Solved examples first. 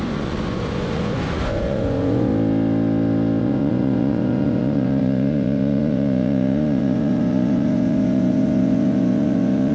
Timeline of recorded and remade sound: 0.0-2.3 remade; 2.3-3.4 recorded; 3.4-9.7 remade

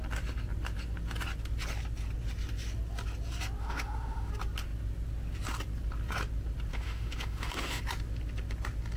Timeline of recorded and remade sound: 0.0-3.6 recorded; 3.6-4.3 remade; 4.3-6.7 recorded; 6.7-7.8 remade; 7.8-9.0 recorded

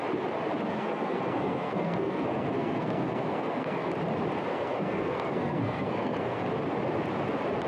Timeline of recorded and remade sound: 0.0-0.7 recorded; 0.7-3.9 remade; 3.9-4.5 recorded; 4.5-6.4 remade; 6.4-7.7 recorded